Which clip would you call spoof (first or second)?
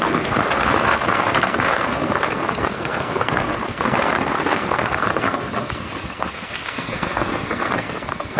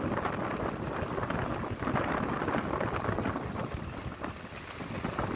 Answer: first